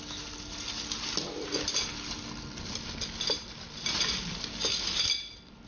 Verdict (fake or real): real